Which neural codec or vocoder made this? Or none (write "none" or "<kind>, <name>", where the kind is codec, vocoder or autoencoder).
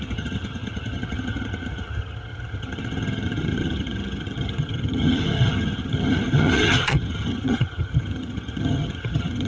vocoder, HiFi-GAN